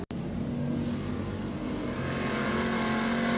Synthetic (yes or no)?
no